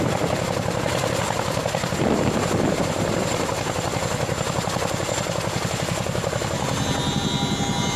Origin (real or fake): real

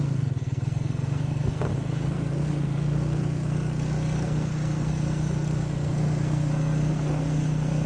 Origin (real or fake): fake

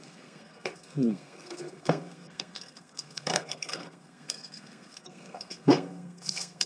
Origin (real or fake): fake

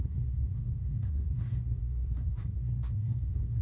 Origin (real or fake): fake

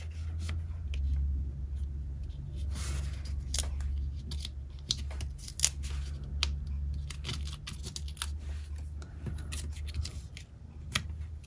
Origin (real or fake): real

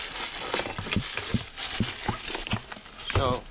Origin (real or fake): real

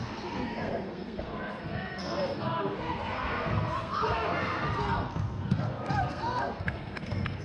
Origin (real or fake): fake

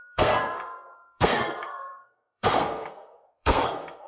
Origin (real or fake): fake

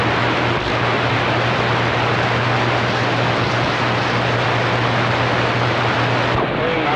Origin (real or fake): real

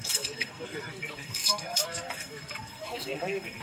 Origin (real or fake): fake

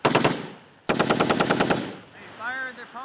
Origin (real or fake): real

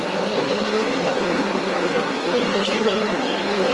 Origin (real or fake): fake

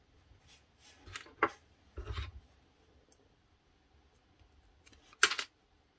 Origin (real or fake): real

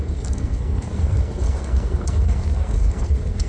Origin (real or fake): fake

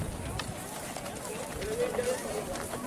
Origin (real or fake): real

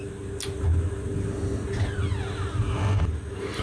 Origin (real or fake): real